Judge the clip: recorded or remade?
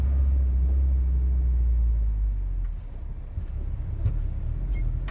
recorded